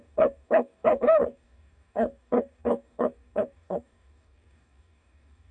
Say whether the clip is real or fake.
fake